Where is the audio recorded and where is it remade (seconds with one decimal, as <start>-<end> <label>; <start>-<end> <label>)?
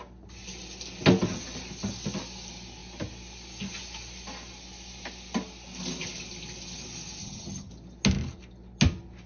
0.0-7.2 recorded; 7.2-7.7 remade; 7.7-9.3 recorded